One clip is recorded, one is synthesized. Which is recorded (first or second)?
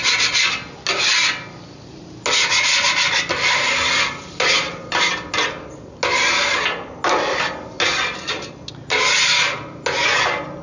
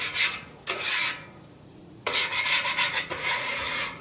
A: first